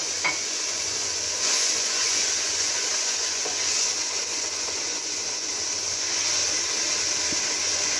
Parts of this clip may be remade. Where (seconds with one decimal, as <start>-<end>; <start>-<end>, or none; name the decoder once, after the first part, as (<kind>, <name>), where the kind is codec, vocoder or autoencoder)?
0.0-6.4 (vocoder, Vocos); 7.6-8.0